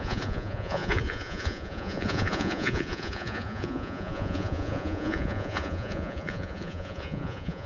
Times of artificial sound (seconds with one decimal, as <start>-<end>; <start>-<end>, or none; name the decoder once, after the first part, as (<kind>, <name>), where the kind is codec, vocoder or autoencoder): 0.0-7.7 (vocoder, Vocos)